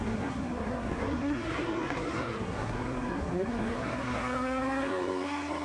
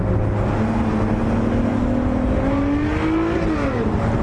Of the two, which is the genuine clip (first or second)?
second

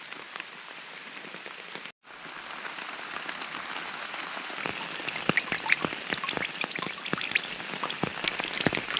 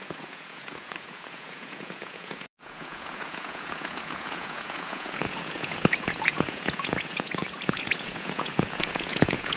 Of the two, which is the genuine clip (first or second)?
first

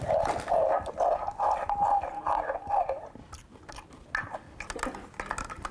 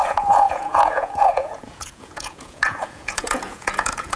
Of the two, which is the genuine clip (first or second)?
first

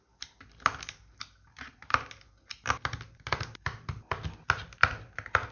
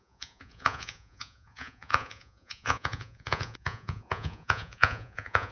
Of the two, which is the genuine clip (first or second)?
first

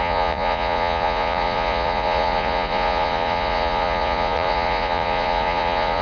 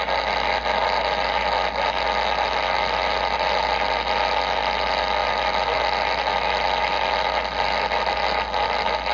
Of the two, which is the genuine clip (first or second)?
second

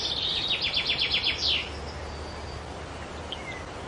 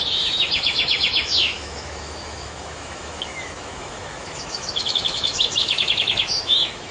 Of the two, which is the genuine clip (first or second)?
first